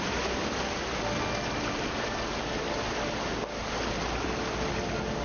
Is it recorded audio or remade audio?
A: recorded